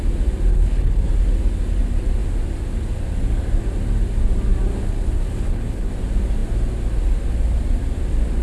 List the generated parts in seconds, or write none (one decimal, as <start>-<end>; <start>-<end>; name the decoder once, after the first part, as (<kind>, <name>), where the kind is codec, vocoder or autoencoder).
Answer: 0.5-1.1 (codec, HILCodec); 4.7-5.9